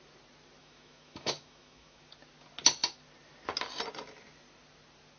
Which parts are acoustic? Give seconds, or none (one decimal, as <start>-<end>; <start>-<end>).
0.0-0.6; 2.0-5.2